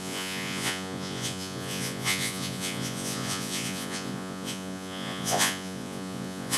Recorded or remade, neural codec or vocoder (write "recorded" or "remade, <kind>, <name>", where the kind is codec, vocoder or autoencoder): remade, vocoder, Vocos